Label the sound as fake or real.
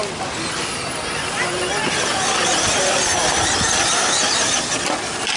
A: real